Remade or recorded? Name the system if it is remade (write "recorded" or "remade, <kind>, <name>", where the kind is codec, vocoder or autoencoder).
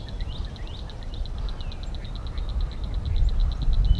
recorded